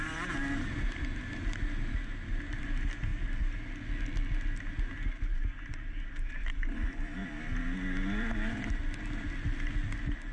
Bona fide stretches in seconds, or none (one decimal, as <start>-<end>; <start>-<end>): 0.0-10.3